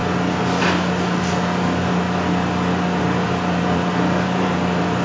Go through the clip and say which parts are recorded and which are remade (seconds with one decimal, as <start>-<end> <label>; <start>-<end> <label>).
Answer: 0.0-3.0 recorded; 3.0-5.0 remade